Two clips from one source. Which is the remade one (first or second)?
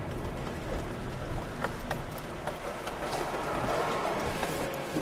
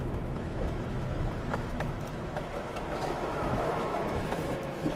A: second